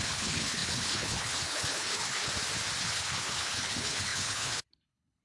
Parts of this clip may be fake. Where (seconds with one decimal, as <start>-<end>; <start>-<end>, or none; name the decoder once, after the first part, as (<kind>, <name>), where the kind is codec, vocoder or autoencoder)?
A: 0.0-2.3 (codec, HILCodec); 2.8-5.2